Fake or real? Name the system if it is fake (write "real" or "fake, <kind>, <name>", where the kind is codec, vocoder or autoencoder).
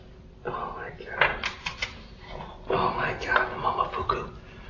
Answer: real